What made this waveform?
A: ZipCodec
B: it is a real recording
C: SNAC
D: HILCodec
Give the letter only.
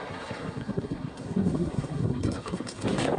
C